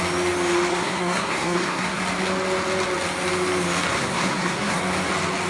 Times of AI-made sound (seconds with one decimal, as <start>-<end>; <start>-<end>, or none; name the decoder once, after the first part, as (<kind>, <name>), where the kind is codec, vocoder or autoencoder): 0.7-2.0 (codec, SNAC); 3.9-4.8